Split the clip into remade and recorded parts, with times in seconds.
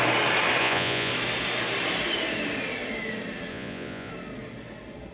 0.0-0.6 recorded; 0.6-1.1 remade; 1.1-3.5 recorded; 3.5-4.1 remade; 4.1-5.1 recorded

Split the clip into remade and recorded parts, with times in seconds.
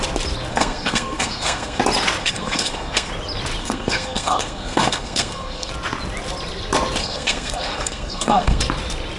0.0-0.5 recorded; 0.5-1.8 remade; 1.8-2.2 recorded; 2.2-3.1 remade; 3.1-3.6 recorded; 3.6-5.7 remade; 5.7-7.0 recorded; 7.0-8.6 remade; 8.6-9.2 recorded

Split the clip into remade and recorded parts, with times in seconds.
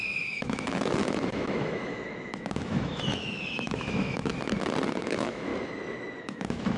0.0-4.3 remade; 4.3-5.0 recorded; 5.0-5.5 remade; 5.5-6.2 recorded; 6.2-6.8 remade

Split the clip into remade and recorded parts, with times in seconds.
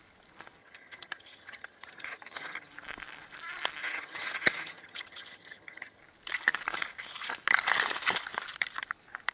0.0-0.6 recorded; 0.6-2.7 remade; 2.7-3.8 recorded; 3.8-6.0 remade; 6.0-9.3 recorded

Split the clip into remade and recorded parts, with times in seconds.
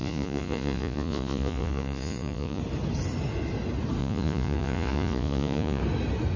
0.0-2.6 remade; 2.6-4.0 recorded; 4.0-5.8 remade; 5.8-6.4 recorded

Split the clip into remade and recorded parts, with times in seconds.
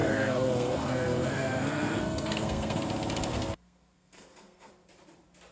0.0-2.8 remade; 2.8-3.3 recorded; 3.3-4.7 remade; 4.7-5.5 recorded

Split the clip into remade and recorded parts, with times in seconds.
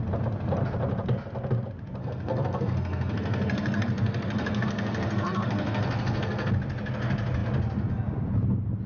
0.0-2.0 recorded; 2.0-6.5 remade; 6.5-8.9 recorded